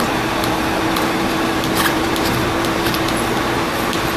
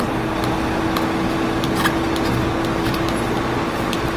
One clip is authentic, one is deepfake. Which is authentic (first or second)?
second